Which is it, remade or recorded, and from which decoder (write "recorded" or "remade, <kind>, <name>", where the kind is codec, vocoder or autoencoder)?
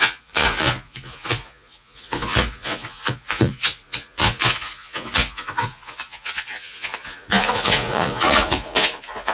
remade, vocoder, Vocos